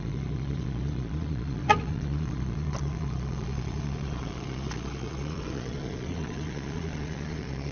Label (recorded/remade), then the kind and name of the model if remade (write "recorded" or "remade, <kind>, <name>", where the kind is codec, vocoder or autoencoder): remade, vocoder, Vocos